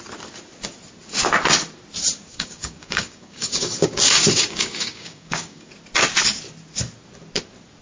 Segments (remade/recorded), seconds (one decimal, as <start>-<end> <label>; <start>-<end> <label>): 0.0-2.3 recorded; 2.3-5.7 remade; 5.7-7.8 recorded